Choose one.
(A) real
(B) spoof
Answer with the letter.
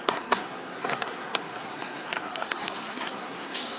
B